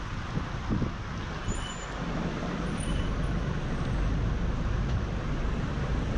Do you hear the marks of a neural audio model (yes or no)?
no